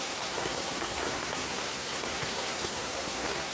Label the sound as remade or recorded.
remade